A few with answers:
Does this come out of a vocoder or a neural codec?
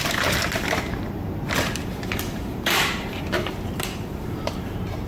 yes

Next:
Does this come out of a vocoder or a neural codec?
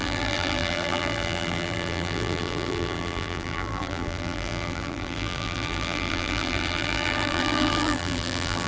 yes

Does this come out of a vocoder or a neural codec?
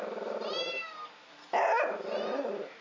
no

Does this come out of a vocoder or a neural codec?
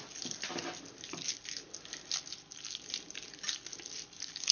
no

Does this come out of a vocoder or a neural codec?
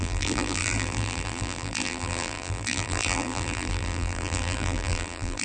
yes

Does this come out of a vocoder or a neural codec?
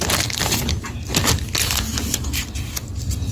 no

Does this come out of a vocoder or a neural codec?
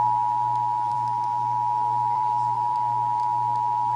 yes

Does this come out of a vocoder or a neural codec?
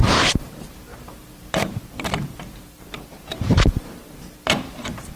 yes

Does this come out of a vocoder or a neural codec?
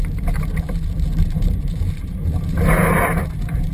yes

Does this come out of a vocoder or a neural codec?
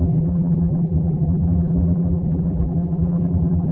yes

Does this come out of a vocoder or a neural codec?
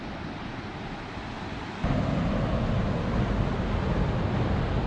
no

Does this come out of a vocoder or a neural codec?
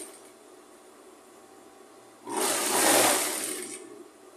no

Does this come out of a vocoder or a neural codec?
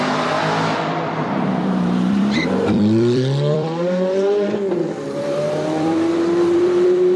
yes